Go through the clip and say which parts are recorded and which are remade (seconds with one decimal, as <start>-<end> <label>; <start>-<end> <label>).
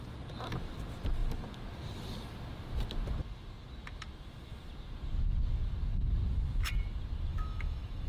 0.0-7.3 recorded; 7.3-8.1 remade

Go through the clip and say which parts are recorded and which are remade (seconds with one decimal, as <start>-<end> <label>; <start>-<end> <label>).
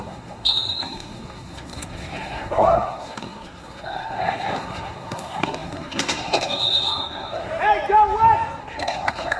0.0-7.5 remade; 7.5-8.6 recorded; 8.6-9.4 remade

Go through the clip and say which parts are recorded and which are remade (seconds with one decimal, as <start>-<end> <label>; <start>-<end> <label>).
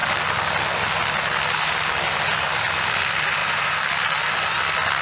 0.0-5.0 recorded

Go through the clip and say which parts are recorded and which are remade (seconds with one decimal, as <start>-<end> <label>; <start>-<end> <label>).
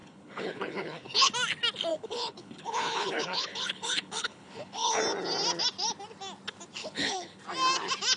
0.0-1.3 remade; 1.3-1.9 recorded; 1.9-5.0 remade; 5.0-6.8 recorded; 6.8-7.4 remade; 7.4-8.2 recorded